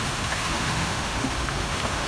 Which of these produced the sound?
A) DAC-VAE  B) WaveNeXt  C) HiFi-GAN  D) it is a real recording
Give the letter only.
A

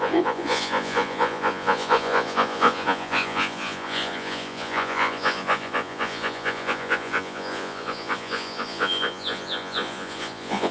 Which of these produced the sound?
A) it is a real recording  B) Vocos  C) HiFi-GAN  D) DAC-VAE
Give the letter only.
B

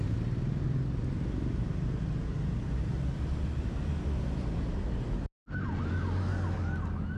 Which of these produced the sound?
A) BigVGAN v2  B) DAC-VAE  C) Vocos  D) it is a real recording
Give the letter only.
D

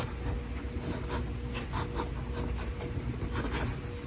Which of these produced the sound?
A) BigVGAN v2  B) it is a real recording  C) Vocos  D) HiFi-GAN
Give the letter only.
B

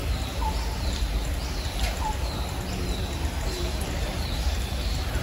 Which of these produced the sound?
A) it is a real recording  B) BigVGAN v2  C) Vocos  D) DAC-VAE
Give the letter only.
A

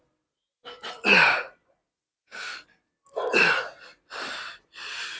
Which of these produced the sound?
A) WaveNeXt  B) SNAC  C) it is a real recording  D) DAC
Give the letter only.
C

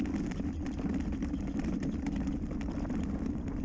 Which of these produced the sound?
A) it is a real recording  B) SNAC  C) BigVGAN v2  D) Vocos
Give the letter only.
C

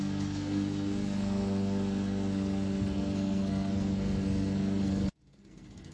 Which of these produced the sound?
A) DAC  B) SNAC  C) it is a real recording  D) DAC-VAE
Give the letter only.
B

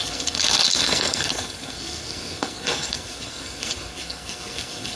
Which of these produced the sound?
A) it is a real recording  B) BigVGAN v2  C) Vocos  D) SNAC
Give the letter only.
D